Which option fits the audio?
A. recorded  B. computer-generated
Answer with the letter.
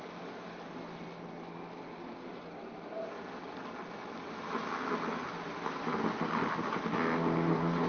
A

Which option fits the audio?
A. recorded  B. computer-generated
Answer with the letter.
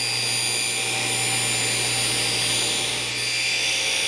A